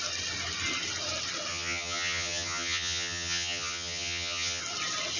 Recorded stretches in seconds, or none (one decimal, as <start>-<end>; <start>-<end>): 0.0-1.5; 4.6-5.2